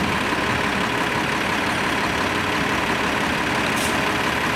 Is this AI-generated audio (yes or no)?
no